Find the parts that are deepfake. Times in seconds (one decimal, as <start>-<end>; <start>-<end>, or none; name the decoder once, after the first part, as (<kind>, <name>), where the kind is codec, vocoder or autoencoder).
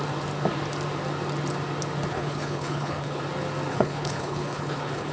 2.1-3.2 (codec, HILCodec); 3.7-5.1